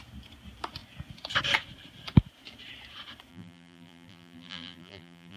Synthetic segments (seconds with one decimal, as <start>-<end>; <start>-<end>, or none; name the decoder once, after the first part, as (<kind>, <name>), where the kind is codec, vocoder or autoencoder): 3.3-5.4 (vocoder, BigVGAN v2)